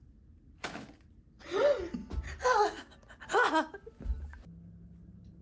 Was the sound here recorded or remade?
recorded